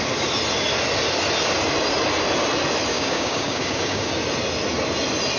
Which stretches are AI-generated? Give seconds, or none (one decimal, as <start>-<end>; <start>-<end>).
2.9-4.1